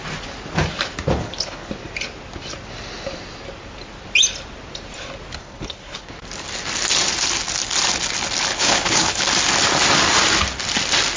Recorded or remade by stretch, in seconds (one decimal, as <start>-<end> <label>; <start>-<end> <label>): 0.0-1.2 recorded; 1.2-1.7 remade; 1.7-5.4 recorded; 5.4-6.1 remade; 6.1-8.5 recorded; 8.5-9.2 remade; 9.2-11.2 recorded